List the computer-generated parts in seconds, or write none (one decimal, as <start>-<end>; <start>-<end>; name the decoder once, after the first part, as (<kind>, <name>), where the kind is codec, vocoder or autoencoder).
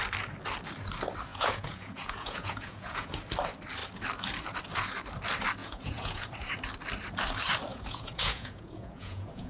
1.3-3.1 (vocoder, Vocos); 5.6-6.3; 7.7-9.5